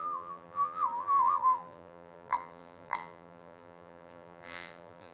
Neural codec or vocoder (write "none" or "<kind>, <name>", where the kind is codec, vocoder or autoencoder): vocoder, BigVGAN v2